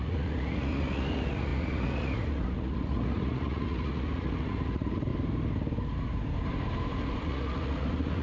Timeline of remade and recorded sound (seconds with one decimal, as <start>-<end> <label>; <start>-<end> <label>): 0.0-5.1 remade; 5.1-7.2 recorded; 7.2-8.2 remade